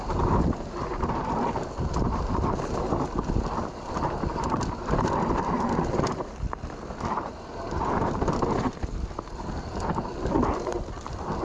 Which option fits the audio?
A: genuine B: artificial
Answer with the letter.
A